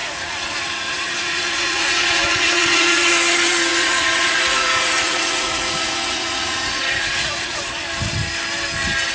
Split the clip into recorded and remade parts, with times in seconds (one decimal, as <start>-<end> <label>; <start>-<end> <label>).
0.0-3.1 remade; 3.1-3.7 recorded; 3.7-7.7 remade; 7.7-9.1 recorded